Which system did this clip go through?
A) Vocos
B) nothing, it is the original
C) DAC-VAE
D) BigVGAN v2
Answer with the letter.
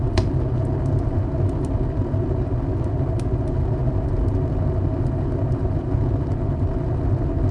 B